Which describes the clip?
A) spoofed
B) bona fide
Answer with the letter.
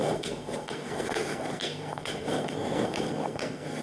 A